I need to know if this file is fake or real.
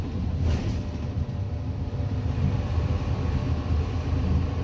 real